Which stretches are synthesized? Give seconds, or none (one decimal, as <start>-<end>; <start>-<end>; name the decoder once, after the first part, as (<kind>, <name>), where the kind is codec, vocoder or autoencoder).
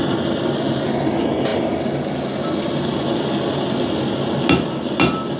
none